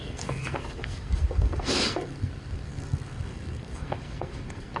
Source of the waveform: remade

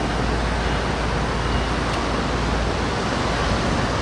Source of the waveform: recorded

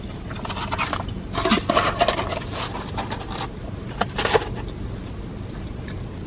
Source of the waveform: recorded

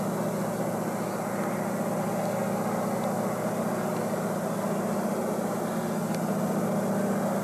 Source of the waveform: recorded